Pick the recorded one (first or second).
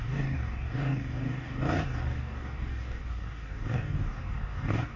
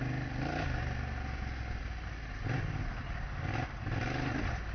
second